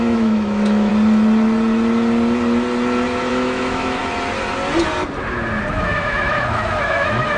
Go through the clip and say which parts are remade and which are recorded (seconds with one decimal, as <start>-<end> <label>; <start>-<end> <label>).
0.0-0.9 remade; 0.9-3.3 recorded; 3.3-4.0 remade; 4.0-5.7 recorded; 5.7-7.4 remade